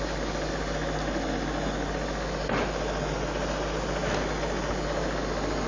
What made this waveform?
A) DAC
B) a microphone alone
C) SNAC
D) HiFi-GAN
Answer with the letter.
B